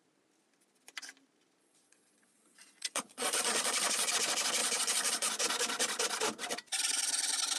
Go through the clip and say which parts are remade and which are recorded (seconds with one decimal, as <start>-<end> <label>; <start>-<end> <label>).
0.0-1.6 recorded; 1.6-4.1 remade; 4.1-4.6 recorded; 4.6-5.3 remade; 5.3-7.6 recorded